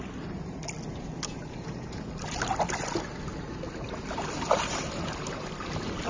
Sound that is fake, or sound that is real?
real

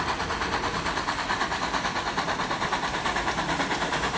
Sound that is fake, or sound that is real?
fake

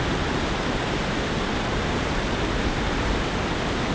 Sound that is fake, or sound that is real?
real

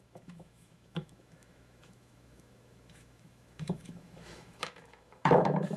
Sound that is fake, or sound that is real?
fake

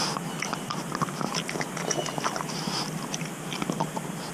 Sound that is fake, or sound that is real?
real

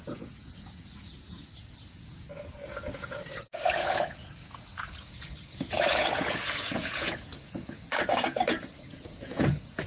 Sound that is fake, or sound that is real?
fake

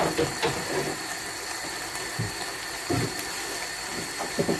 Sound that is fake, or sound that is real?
real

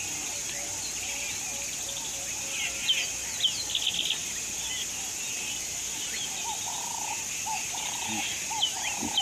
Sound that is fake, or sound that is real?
real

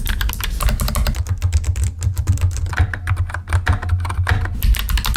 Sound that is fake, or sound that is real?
real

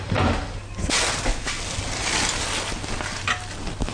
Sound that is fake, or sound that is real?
real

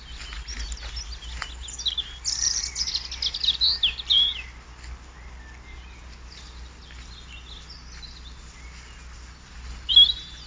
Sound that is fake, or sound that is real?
real